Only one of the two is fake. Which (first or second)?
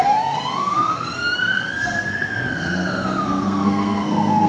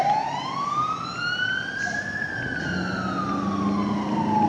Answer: first